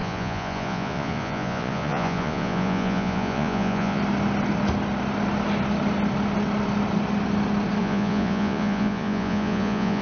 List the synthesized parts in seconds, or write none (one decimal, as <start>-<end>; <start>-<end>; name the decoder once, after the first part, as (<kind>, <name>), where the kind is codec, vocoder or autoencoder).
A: 0.0-4.0 (vocoder, Vocos); 7.8-10.0